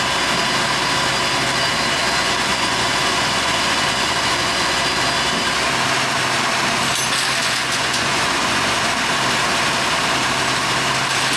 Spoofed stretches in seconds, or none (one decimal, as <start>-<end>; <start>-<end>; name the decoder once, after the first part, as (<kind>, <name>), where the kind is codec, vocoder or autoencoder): 2.0-4.8 (vocoder, Vocos); 7.4-8.9